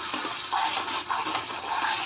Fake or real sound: real